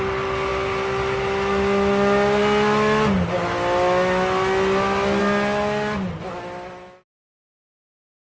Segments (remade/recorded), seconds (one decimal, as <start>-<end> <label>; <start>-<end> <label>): 0.0-8.2 recorded

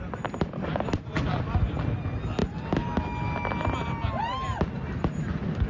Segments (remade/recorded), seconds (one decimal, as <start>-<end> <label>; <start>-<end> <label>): 0.0-5.7 recorded

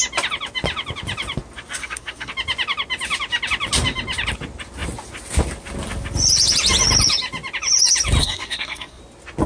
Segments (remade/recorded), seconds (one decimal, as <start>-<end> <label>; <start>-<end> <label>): 0.0-1.8 recorded; 1.8-2.3 remade; 2.3-8.2 recorded; 8.2-9.0 remade; 9.0-9.5 recorded

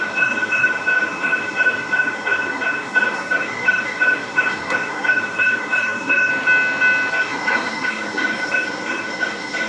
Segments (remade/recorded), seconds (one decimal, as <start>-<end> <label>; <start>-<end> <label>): 0.0-6.3 remade; 6.3-7.1 recorded; 7.1-9.7 remade

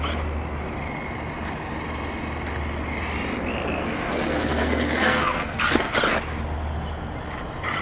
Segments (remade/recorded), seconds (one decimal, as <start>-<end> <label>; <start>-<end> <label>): 0.0-3.8 recorded; 3.8-5.9 remade; 5.9-7.8 recorded

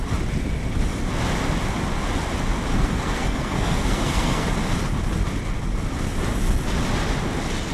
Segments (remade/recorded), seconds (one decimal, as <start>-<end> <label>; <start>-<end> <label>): 0.0-2.7 recorded; 2.7-4.5 remade; 4.5-7.7 recorded